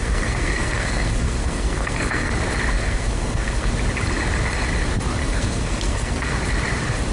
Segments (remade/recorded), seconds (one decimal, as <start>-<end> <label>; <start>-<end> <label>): 0.0-2.3 remade; 2.3-2.8 recorded; 2.8-3.7 remade; 3.7-5.2 recorded; 5.2-6.4 remade; 6.4-7.1 recorded